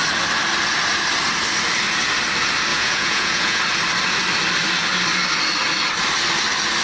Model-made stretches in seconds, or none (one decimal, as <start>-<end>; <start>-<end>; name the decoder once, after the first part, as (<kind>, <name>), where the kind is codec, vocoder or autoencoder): 2.7-3.6 (vocoder, Vocos)